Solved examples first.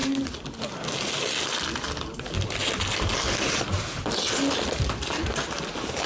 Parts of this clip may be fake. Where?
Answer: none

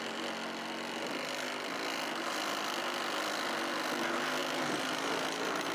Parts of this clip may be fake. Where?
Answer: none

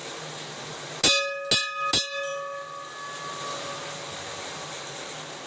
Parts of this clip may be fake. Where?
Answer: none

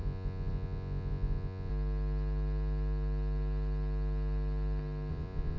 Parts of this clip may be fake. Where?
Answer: 0.0-1.7 (vocoder, Vocos); 5.1-5.6

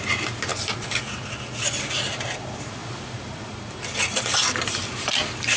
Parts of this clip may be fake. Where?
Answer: 0.5-1.0 (vocoder, BigVGAN v2); 2.8-3.8

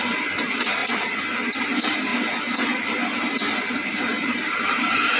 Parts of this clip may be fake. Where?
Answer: 0.0-0.8 (vocoder, BigVGAN v2); 1.5-2.1; 3.6-5.2

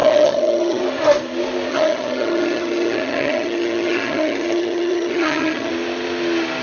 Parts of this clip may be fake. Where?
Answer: 0.0-0.8 (vocoder, HiFi-GAN); 1.7-5.7

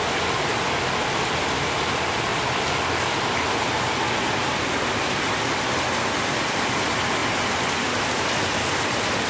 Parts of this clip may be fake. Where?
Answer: 2.3-4.0 (vocoder, BigVGAN v2)